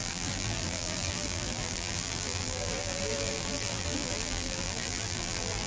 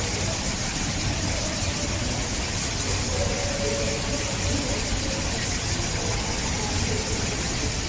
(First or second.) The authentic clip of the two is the second